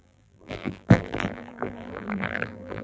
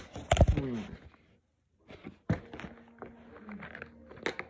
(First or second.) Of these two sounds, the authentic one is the second